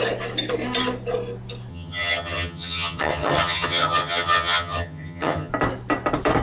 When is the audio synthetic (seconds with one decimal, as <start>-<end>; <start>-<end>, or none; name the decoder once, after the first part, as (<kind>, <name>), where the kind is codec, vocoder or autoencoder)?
1.7-5.5 (vocoder, HiFi-GAN)